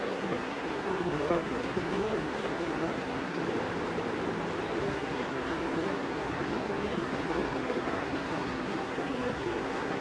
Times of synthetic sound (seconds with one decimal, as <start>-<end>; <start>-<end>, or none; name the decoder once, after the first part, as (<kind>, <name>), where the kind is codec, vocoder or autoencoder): 0.0-3.4 (codec, SNAC); 4.8-10.0